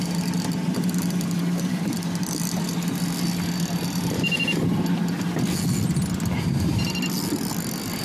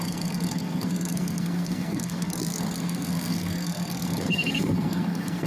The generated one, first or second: second